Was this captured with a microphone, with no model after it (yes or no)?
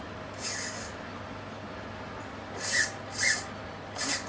yes